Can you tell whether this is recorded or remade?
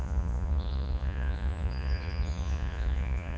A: remade